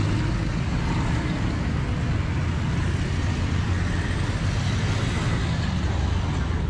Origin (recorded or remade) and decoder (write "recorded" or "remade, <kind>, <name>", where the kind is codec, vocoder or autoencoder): recorded